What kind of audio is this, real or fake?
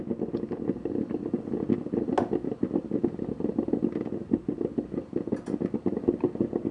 real